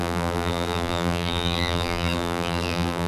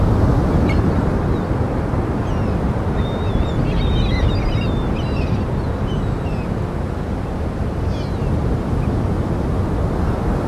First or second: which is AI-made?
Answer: first